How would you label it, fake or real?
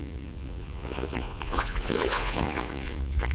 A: fake